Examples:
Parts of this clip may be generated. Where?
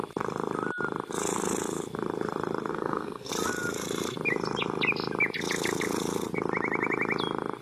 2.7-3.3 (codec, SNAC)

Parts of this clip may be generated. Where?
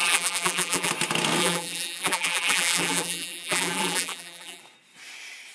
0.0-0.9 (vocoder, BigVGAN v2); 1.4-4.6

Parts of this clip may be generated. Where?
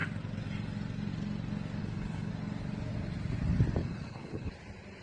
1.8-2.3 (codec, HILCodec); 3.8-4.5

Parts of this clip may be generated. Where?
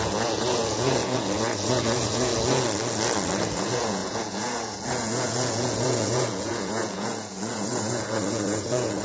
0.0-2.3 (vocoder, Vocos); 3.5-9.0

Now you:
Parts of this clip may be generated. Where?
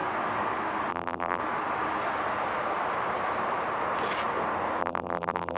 0.9-1.4 (vocoder, BigVGAN v2); 4.8-5.6